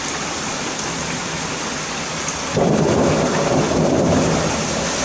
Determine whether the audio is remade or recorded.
recorded